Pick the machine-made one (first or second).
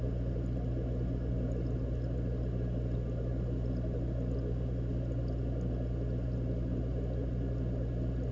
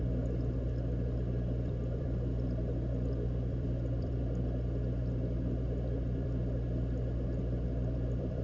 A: second